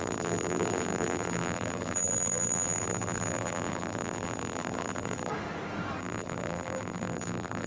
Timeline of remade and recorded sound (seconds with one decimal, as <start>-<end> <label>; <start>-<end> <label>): 0.0-5.3 remade; 5.3-6.0 recorded; 6.0-7.7 remade